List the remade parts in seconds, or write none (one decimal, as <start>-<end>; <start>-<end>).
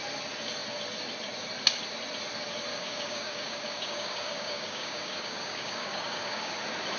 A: 2.7-6.5